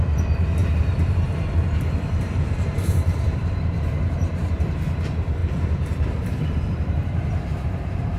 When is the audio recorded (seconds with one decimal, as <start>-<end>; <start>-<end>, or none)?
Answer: 0.0-0.6; 4.6-5.4